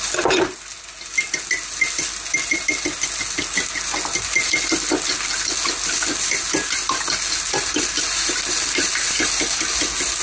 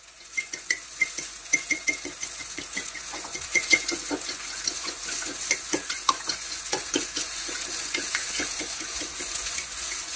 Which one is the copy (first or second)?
second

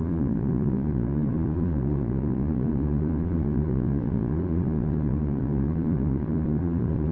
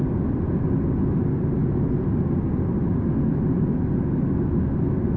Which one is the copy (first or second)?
first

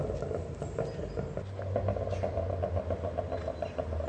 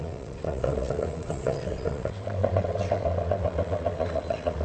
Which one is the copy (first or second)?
second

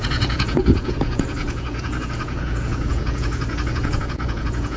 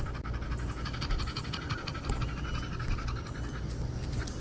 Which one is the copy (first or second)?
first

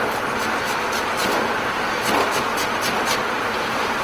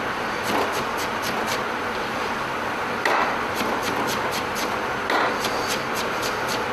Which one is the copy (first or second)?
first